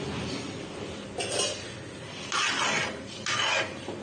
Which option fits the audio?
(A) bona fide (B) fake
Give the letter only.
A